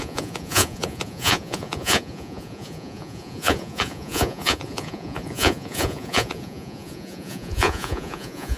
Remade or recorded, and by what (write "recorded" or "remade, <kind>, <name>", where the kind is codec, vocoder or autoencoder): remade, vocoder, Vocos